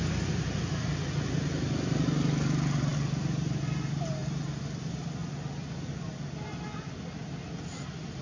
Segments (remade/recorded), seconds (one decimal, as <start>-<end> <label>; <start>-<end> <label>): 0.0-8.2 recorded